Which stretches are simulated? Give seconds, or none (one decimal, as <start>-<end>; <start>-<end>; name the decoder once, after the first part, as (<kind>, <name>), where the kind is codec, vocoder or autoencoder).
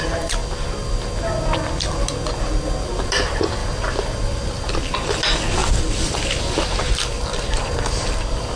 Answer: 3.6-4.5 (vocoder, BigVGAN v2); 5.6-7.4